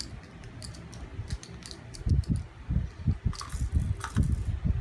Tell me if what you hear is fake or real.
real